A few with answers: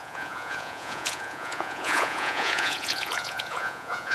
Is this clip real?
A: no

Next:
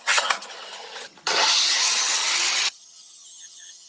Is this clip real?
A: no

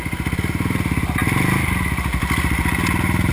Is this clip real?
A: yes